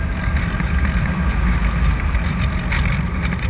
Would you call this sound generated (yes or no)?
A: no